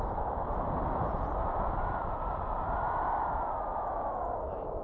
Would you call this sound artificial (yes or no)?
no